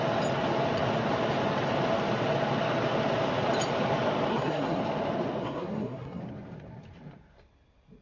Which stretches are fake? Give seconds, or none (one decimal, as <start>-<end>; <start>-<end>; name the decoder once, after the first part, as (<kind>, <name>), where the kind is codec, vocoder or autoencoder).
4.3-4.8 (codec, SNAC); 5.4-6.2